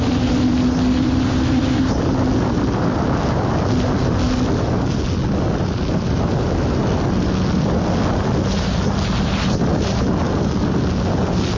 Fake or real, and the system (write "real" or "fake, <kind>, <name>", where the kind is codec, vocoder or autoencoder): real